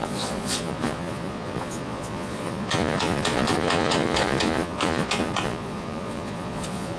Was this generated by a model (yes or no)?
yes